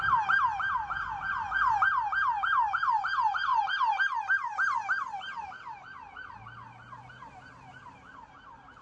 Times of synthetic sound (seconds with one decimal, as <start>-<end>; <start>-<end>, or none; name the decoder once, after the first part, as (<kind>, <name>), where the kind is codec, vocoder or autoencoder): none